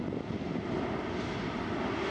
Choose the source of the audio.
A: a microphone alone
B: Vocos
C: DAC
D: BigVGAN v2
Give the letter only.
A